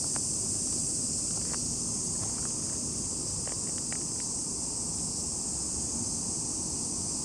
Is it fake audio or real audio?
real